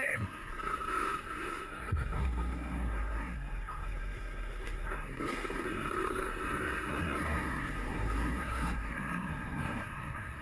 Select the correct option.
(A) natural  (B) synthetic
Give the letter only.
B